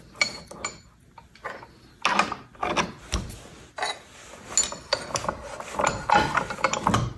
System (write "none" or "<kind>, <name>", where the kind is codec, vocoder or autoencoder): none